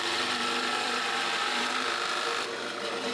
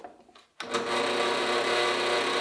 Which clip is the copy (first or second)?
first